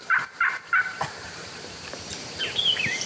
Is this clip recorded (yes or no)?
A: no